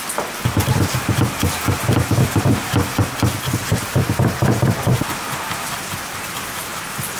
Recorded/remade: recorded